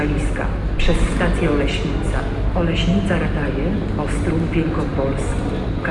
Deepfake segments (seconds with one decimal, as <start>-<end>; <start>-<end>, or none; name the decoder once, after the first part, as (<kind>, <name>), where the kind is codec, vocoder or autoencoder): none